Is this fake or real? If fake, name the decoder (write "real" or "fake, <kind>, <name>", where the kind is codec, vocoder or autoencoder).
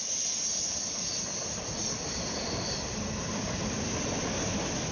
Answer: real